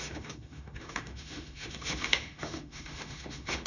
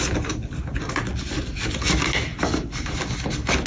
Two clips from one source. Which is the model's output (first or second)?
first